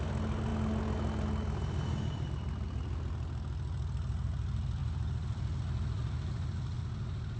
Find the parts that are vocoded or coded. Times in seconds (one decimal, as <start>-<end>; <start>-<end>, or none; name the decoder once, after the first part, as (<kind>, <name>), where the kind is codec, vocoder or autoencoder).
4.8-6.8 (vocoder, BigVGAN v2)